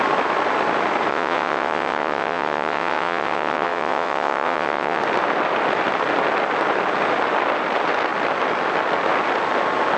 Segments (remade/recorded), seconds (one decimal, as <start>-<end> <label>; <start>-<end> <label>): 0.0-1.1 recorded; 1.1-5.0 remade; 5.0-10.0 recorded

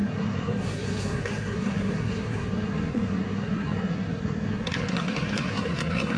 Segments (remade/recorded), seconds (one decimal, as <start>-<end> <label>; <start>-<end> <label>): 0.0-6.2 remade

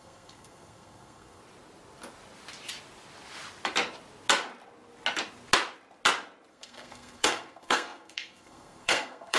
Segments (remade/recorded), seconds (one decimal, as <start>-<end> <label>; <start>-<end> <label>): 0.0-1.4 remade; 1.4-6.5 recorded; 6.5-9.4 remade

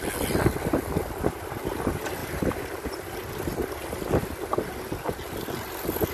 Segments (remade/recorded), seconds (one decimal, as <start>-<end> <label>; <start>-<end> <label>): 0.0-6.1 recorded

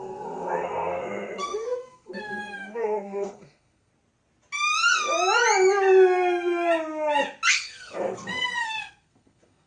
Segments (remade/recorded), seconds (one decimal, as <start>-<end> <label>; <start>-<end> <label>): 0.0-3.9 remade; 3.9-7.5 recorded; 7.5-9.7 remade